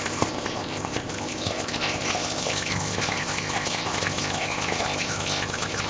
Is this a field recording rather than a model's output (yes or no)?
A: no